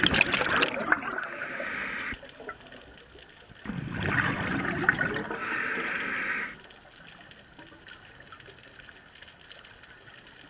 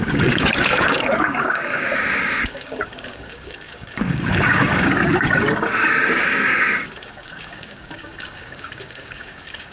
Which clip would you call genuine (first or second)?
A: first